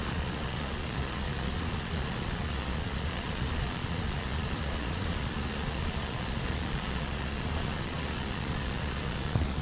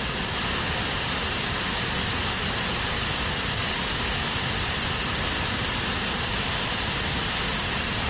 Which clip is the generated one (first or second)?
first